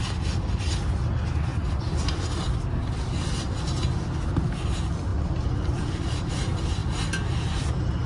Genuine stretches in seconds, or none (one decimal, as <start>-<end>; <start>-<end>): 0.0-8.1